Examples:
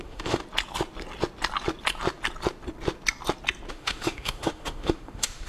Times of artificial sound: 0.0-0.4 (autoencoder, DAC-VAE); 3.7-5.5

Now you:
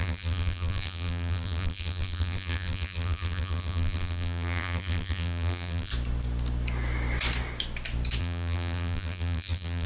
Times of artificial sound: 0.0-5.9 (vocoder, BigVGAN v2); 8.2-9.9

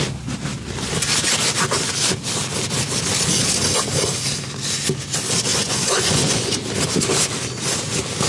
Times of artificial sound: 5.5-6.6 (vocoder, Vocos)

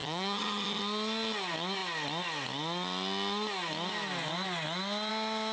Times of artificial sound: 0.0-0.8 (vocoder, HiFi-GAN)

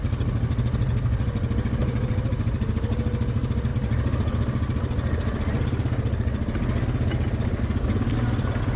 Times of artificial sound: 1.8-2.3 (vocoder, BigVGAN v2)

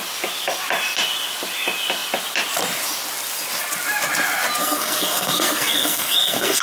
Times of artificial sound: 4.6-6.6 (codec, SNAC)